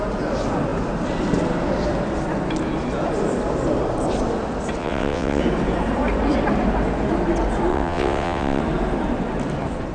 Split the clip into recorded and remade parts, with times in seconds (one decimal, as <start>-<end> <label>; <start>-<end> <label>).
0.0-4.8 recorded; 4.8-5.4 remade; 5.4-7.7 recorded; 7.7-8.6 remade; 8.6-9.9 recorded